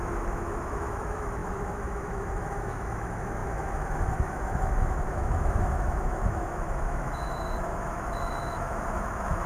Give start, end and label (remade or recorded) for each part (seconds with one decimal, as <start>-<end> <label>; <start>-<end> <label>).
0.0-9.5 remade